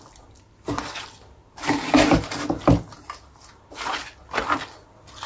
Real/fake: real